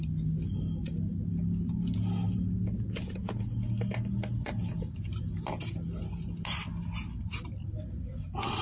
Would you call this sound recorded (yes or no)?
yes